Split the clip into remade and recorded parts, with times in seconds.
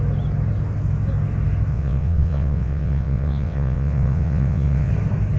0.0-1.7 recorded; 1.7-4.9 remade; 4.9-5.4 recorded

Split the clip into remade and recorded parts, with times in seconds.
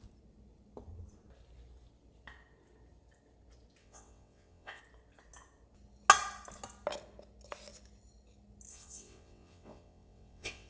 0.0-3.8 recorded; 3.8-4.8 remade; 4.8-8.7 recorded; 8.7-10.7 remade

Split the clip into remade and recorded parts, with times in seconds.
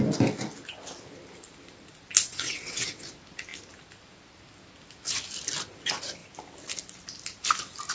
0.0-2.3 recorded; 2.3-3.0 remade; 3.0-7.9 recorded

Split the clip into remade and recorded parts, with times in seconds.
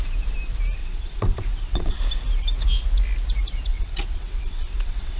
0.0-0.8 recorded; 0.8-2.0 remade; 2.0-3.7 recorded; 3.7-5.2 remade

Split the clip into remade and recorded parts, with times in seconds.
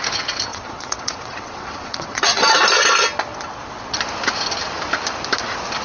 0.0-0.5 recorded; 0.5-2.4 remade; 2.4-5.8 recorded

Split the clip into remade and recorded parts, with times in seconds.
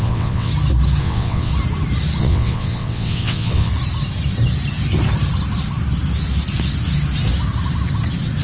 0.0-0.5 remade; 0.5-1.0 recorded; 1.0-1.5 remade; 1.5-2.2 recorded; 2.2-3.7 remade; 3.7-8.4 recorded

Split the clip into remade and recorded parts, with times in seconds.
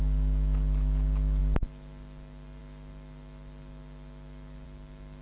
0.0-5.2 recorded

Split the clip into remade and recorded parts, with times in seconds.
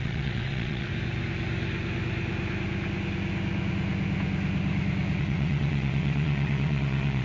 0.0-0.9 remade; 0.9-5.2 recorded; 5.2-7.2 remade